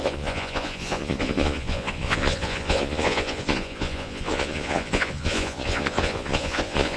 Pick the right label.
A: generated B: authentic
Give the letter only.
A